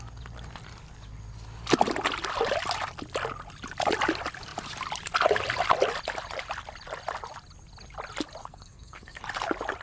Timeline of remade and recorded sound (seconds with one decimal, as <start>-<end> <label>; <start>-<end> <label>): 0.0-8.4 recorded; 8.4-9.2 remade; 9.2-9.8 recorded